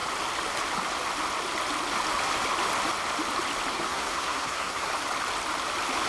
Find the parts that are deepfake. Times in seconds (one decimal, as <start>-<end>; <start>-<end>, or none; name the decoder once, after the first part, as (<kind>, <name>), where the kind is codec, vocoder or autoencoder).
3.7-4.9 (codec, SNAC)